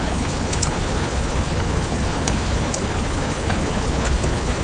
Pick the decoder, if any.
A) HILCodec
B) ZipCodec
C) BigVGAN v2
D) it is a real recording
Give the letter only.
A